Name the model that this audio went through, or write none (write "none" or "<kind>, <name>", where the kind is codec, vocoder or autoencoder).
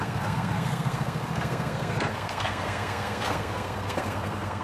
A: codec, SNAC